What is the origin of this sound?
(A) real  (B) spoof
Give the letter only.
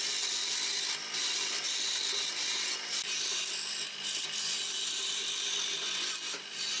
A